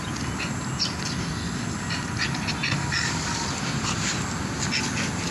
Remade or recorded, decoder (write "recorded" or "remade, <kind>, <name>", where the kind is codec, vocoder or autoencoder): recorded